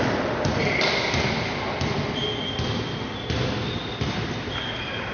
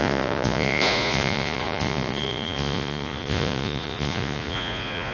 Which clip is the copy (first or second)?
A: second